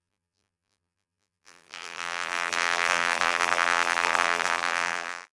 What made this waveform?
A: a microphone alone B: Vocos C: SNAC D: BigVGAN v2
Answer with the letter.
D